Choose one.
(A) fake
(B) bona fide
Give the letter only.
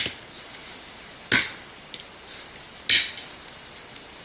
B